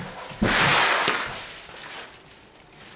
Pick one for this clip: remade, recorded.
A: recorded